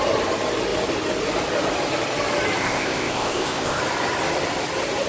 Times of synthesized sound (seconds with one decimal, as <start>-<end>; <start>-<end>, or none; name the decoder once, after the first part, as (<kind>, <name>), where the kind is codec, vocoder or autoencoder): 2.6-3.8 (codec, ZipCodec)